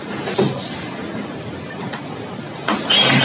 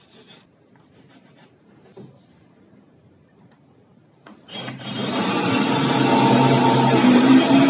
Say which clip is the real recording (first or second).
first